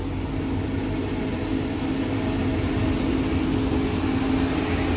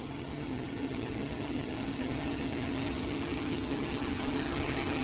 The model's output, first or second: second